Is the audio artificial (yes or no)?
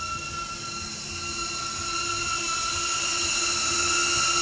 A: no